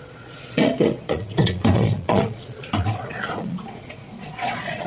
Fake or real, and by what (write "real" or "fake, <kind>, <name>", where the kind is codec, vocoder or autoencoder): fake, vocoder, Vocos